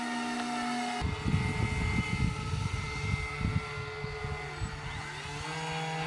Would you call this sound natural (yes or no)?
yes